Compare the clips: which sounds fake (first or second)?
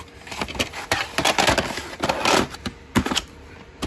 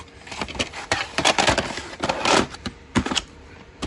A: second